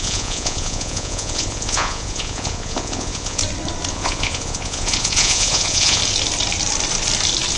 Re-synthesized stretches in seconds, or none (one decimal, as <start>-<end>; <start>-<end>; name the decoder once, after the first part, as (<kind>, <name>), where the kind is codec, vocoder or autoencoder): 0.0-3.4 (vocoder, Vocos); 3.9-6.0